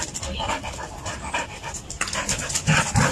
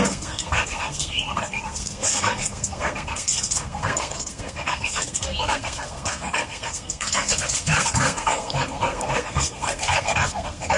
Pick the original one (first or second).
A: first